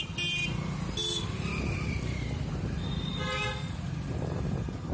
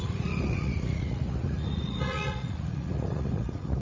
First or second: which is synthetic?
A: second